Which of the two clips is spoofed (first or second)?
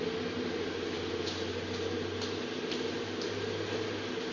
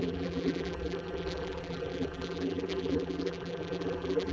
second